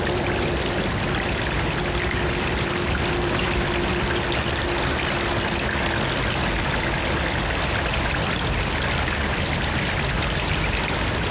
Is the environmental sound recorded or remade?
recorded